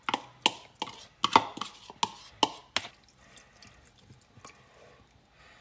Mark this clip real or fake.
real